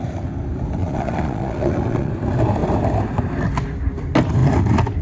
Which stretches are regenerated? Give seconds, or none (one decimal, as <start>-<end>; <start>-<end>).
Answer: 0.8-2.1